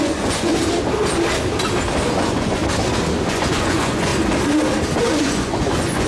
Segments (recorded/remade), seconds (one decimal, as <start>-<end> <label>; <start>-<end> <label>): 0.0-0.5 remade; 0.5-2.1 recorded; 2.1-2.6 remade; 2.6-3.3 recorded; 3.3-4.1 remade; 4.1-5.2 recorded; 5.2-6.1 remade